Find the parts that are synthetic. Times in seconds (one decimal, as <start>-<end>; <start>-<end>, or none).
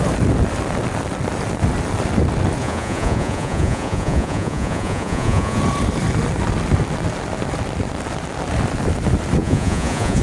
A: 2.6-5.6; 9.4-10.2